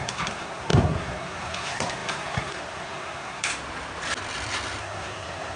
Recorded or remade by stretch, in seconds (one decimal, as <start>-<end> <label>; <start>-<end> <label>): 0.0-3.5 remade; 3.5-4.8 recorded; 4.8-5.6 remade